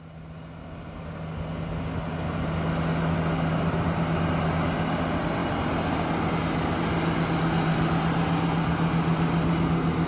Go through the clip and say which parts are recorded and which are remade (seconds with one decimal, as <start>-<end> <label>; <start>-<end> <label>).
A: 0.0-10.1 recorded